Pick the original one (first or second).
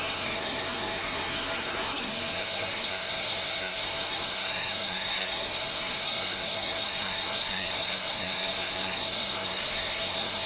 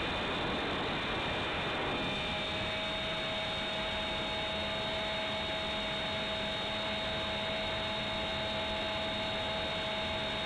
second